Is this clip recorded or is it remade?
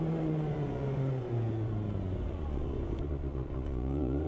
remade